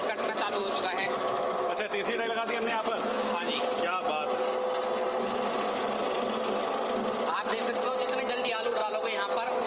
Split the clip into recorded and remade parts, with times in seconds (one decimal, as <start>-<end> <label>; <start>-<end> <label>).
0.0-0.6 recorded; 0.6-3.5 remade; 3.5-9.7 recorded